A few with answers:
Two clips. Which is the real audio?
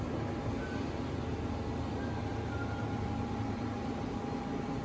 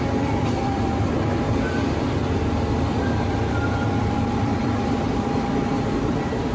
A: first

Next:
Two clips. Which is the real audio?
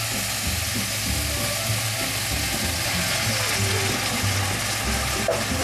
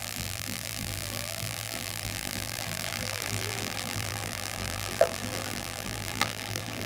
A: first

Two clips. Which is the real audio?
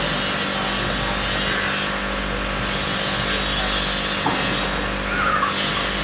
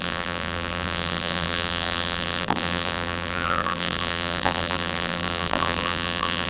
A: first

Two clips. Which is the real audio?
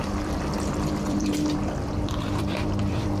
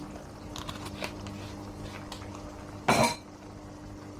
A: second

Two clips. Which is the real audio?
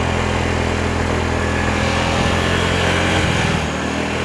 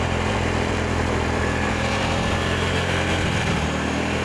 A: first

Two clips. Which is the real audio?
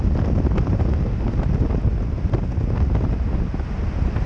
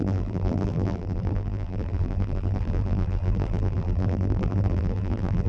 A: first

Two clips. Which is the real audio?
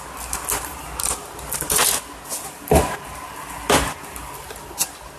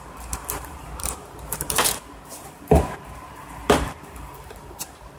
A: first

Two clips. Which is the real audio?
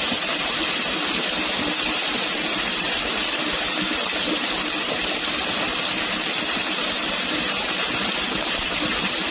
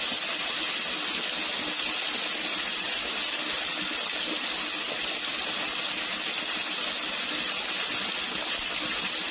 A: second